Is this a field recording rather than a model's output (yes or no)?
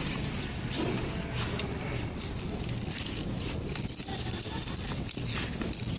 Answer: yes